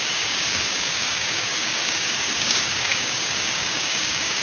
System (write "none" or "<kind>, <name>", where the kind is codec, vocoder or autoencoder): codec, DAC